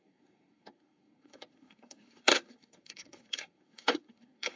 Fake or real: fake